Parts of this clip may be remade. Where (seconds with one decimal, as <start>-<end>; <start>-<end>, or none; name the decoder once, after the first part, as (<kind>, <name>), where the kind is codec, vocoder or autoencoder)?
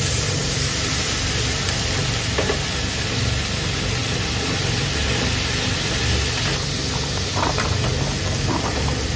none